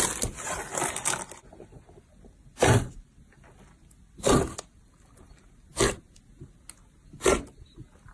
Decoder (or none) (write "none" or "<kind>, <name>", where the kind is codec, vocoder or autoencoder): none